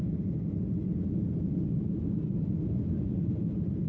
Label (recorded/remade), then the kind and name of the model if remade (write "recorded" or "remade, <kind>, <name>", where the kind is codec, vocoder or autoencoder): recorded